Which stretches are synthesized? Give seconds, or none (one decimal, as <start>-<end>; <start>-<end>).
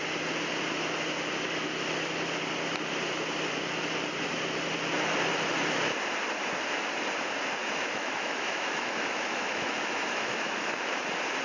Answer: 7.6-11.0